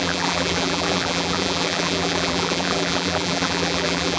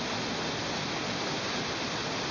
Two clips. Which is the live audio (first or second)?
second